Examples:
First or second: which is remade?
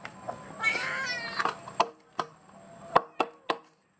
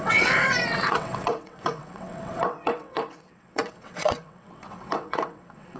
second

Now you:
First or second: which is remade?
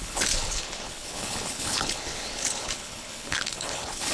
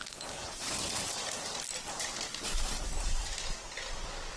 first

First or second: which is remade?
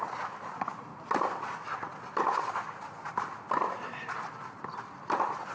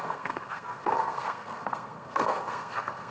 second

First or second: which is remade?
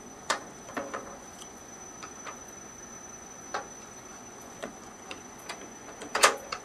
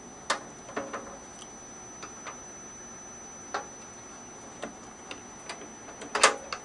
first